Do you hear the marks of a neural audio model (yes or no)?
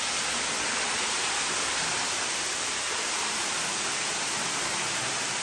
no